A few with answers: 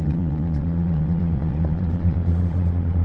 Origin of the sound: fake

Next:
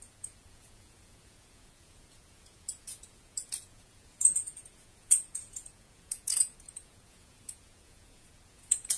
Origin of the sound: fake